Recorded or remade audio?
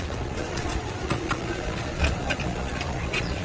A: remade